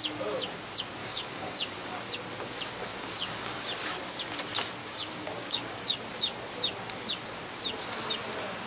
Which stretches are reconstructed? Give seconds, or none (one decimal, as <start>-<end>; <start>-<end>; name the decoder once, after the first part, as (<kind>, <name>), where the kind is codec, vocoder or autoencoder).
1.0-2.0 (codec, DAC); 2.9-3.6; 4.8-6.0